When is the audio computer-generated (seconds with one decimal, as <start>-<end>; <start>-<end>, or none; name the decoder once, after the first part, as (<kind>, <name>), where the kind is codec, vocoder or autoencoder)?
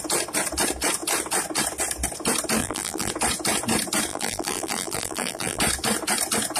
2.6-3.1 (vocoder, BigVGAN v2); 4.1-5.6